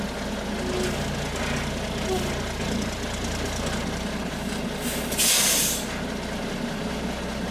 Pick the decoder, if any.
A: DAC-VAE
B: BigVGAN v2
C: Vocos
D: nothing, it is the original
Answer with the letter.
D